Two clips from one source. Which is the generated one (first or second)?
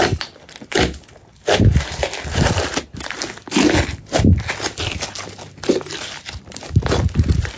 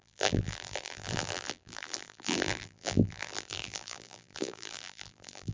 second